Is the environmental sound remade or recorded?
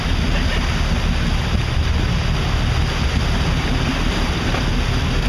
recorded